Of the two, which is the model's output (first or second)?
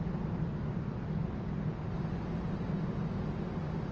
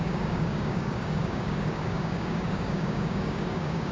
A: second